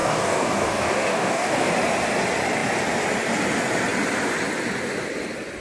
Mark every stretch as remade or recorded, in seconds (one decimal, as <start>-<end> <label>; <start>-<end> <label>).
0.0-1.7 remade; 1.7-5.6 recorded